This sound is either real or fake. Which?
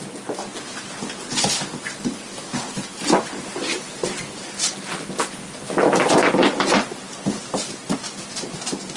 real